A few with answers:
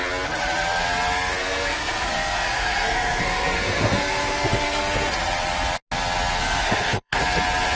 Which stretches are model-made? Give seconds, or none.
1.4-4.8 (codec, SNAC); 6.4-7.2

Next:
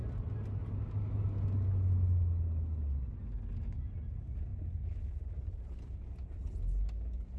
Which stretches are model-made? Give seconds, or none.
none

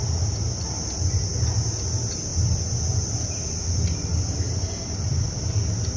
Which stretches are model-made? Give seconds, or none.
none

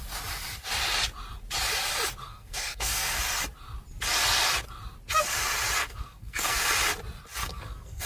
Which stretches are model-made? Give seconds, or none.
2.2-3.2 (codec, SNAC); 5.8-6.7; 7.4-8.1

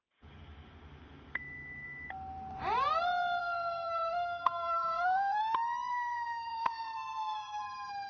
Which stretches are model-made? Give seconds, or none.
3.4-5.4 (codec, SNAC); 5.9-7.6

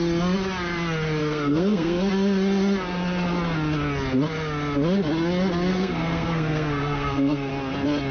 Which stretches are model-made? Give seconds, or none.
1.2-2.1 (codec, SNAC); 5.7-7.5